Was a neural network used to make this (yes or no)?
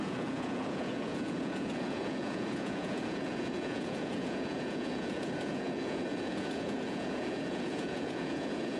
yes